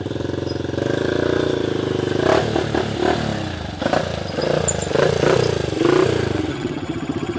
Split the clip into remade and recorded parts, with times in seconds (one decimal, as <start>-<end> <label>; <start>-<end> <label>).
0.0-6.5 recorded; 6.5-7.4 remade